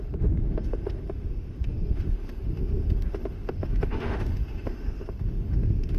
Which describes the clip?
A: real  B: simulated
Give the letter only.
B